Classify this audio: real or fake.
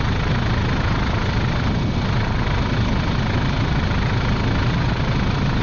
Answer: fake